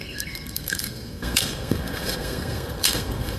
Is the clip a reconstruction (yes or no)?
yes